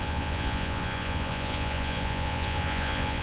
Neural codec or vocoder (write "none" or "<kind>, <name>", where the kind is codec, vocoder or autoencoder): vocoder, Vocos